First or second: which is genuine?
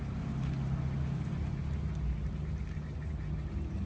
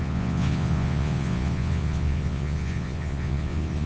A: first